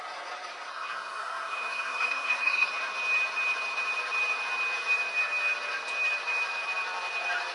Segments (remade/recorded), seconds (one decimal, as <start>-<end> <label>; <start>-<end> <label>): 0.0-0.7 recorded; 0.7-2.7 remade; 2.7-7.5 recorded